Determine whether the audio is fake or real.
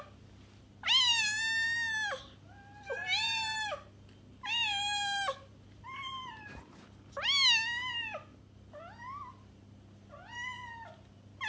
real